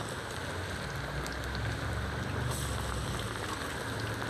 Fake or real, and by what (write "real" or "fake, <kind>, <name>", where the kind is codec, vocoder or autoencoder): real